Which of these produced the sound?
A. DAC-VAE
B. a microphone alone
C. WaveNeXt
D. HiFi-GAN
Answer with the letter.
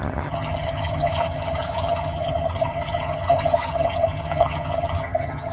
D